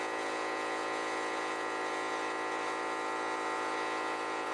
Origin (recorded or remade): remade